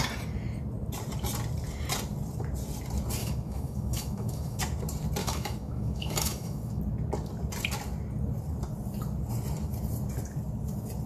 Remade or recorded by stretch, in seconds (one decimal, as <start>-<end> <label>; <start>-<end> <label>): 0.0-3.2 recorded; 3.2-4.6 remade; 4.6-5.2 recorded; 5.2-6.8 remade; 6.8-11.1 recorded

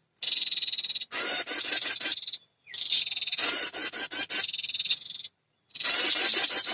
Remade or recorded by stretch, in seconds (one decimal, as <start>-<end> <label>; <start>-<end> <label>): 0.0-6.7 recorded

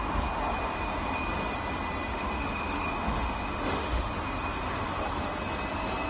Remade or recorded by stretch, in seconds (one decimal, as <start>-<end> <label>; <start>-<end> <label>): 0.0-2.1 recorded; 2.1-4.1 remade; 4.1-6.1 recorded

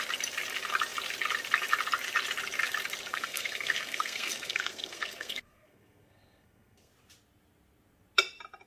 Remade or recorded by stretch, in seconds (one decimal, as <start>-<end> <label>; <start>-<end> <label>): 0.0-3.1 recorded; 3.1-6.9 remade; 6.9-8.7 recorded

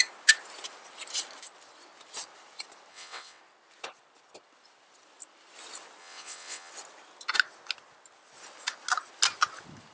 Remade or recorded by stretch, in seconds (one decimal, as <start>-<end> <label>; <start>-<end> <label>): 0.0-2.9 recorded; 2.9-3.4 remade; 3.4-6.0 recorded; 6.0-6.7 remade; 6.7-9.9 recorded

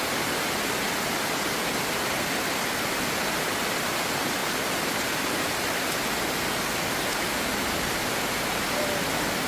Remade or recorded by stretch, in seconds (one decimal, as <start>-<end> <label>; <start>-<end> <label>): 0.0-9.5 recorded

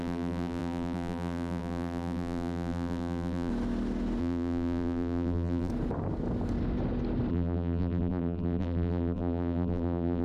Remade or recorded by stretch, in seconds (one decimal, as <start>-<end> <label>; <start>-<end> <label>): 0.0-3.5 remade; 3.5-4.2 recorded; 4.2-5.7 remade; 5.7-7.3 recorded; 7.3-10.2 remade